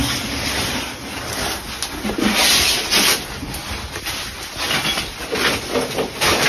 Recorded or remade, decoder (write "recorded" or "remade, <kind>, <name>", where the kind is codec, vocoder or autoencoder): recorded